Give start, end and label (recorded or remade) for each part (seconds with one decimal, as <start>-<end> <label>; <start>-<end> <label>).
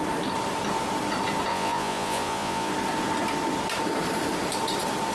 0.0-1.5 recorded; 1.5-2.7 remade; 2.7-5.1 recorded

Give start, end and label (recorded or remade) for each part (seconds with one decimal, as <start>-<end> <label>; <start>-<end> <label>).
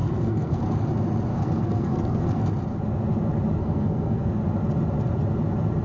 0.0-0.6 remade; 0.6-1.3 recorded; 1.3-2.4 remade; 2.4-3.6 recorded; 3.6-4.3 remade; 4.3-5.8 recorded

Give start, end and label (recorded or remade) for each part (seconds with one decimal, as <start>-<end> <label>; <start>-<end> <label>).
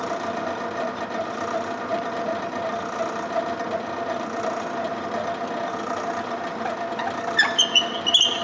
0.0-8.4 recorded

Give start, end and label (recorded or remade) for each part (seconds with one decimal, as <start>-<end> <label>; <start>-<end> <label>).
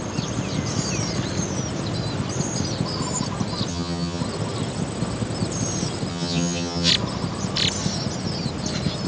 0.0-3.7 recorded; 3.7-4.2 remade; 4.2-6.1 recorded; 6.1-6.9 remade; 6.9-9.1 recorded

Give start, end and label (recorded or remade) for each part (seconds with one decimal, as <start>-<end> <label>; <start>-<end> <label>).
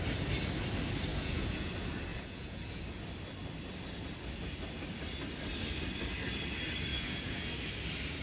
0.0-1.1 recorded; 1.1-1.7 remade; 1.7-2.1 recorded; 2.1-2.8 remade; 2.8-6.9 recorded; 6.9-7.5 remade; 7.5-8.2 recorded